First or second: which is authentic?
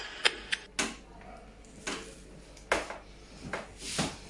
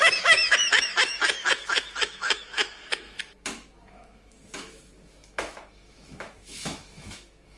first